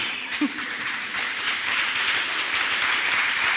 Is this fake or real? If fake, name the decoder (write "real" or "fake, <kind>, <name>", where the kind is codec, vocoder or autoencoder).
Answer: fake, vocoder, BigVGAN v2